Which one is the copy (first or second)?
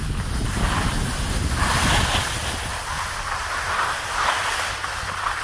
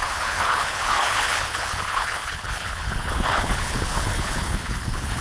second